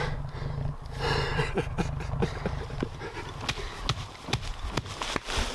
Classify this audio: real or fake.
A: real